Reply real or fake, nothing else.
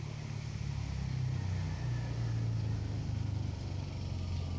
real